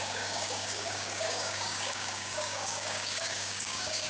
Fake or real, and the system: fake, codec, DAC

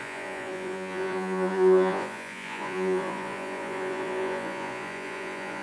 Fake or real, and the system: fake, vocoder, Vocos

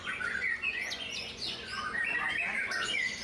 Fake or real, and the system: fake, vocoder, Vocos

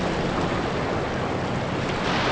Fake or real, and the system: real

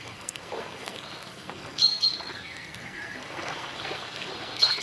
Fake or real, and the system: fake, codec, SNAC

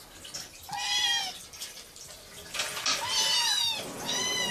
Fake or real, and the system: real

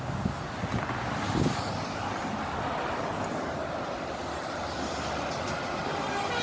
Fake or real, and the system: real